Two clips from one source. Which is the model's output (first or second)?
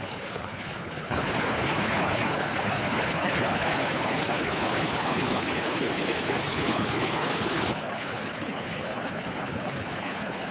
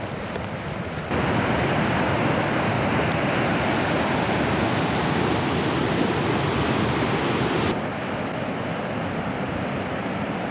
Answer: first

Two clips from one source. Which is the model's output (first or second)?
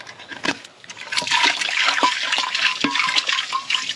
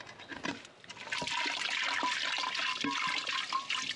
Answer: first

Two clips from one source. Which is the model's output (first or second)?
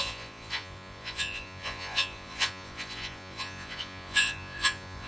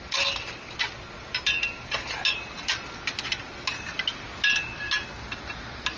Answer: first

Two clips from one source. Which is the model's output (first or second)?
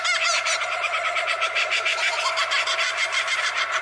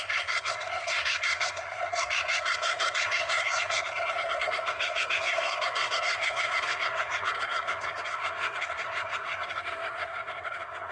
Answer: second